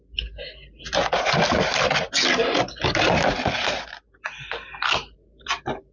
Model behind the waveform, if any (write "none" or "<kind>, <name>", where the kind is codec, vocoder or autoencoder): none